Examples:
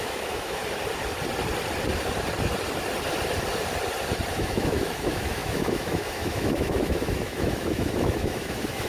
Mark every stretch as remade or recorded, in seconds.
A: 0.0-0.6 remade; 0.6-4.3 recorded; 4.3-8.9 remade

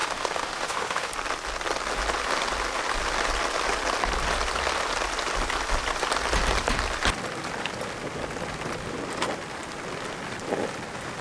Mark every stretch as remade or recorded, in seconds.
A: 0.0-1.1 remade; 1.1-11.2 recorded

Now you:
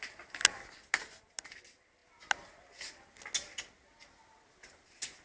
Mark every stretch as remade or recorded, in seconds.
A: 0.0-5.2 recorded

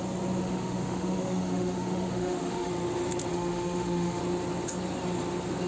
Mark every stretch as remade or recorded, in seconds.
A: 0.0-0.4 recorded; 0.4-2.7 remade; 2.7-3.3 recorded; 3.3-4.2 remade; 4.2-5.7 recorded